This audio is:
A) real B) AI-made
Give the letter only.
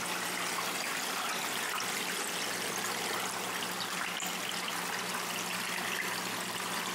A